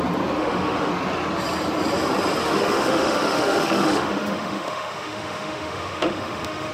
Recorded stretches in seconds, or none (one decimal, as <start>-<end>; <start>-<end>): 0.0-0.4; 0.9-2.4